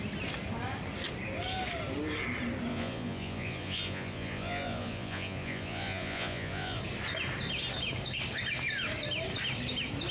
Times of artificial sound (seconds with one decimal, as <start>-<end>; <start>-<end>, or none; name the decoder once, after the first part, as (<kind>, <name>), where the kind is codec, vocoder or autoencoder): 2.7-6.8 (vocoder, Vocos)